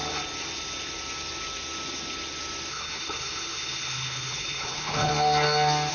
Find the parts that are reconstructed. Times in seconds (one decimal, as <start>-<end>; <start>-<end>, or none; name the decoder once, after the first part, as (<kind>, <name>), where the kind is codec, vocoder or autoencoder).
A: 2.7-5.1 (codec, HILCodec)